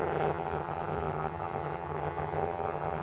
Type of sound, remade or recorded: remade